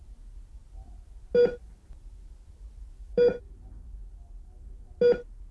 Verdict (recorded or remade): recorded